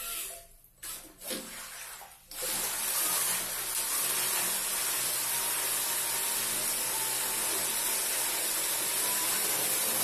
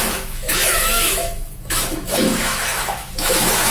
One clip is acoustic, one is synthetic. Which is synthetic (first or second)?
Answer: second